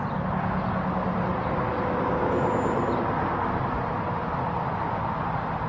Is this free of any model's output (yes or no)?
yes